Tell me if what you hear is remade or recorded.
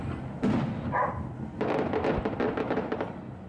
recorded